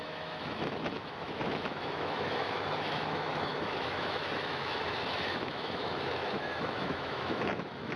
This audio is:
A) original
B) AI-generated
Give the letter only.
B